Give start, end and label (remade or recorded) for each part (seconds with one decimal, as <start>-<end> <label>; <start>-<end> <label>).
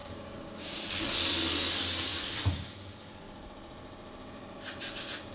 0.0-0.8 remade; 0.8-5.3 recorded